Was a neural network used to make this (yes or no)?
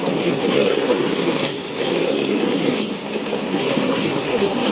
yes